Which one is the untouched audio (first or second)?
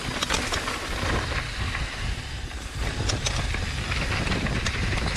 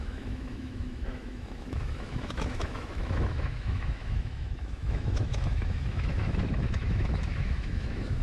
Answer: first